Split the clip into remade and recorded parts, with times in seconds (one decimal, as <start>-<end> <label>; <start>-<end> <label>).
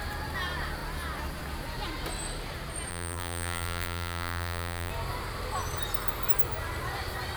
0.0-2.9 recorded; 2.9-4.9 remade; 4.9-7.4 recorded